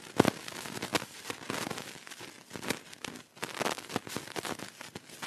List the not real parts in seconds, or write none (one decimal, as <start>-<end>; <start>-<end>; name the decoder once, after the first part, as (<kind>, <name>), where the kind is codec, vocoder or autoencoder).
none